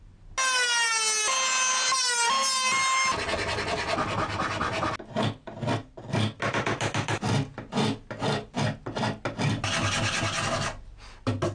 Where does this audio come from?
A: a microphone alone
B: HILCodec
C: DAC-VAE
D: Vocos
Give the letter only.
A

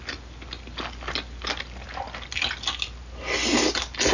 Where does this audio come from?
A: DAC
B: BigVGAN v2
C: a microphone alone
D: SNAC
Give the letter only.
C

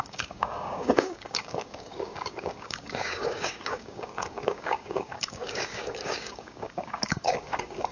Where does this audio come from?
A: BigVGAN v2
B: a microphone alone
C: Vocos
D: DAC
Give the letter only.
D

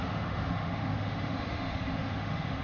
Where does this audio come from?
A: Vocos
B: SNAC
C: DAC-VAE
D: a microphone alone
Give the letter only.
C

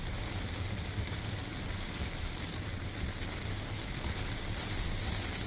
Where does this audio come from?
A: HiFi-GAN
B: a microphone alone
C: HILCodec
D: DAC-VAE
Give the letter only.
B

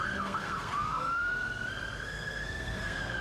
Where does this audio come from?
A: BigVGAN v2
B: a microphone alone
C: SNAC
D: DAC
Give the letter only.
C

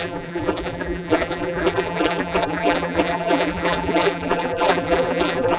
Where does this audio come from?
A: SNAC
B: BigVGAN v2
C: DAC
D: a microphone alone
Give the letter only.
B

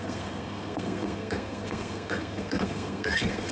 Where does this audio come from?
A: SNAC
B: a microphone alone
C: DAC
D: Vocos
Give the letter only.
A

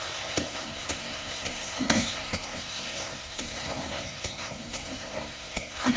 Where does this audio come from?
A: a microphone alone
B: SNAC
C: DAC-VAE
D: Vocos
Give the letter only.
B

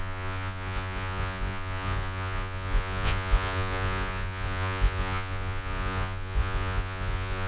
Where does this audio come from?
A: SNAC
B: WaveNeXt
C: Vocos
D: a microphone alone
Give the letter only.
C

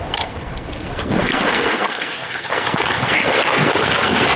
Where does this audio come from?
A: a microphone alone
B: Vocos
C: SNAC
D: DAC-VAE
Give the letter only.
C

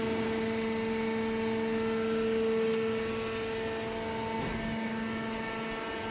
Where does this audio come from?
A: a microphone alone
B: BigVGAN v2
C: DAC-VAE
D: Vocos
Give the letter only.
A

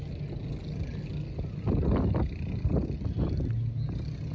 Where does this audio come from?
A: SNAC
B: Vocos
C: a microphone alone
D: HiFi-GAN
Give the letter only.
C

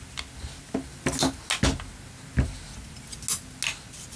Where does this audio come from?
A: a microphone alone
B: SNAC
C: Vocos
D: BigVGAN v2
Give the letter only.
A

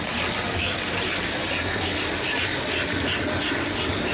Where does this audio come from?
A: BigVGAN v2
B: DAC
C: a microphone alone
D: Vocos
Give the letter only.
C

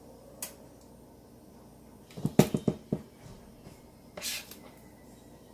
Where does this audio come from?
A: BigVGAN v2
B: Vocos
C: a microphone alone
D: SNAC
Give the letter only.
C